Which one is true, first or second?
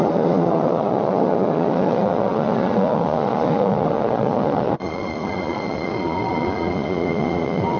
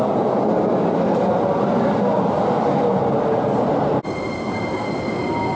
second